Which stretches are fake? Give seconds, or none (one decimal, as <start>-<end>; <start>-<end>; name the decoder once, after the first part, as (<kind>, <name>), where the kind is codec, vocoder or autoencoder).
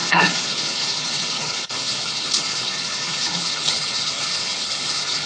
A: 0.0-5.3 (codec, HILCodec)